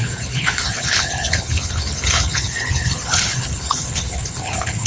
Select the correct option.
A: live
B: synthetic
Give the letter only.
B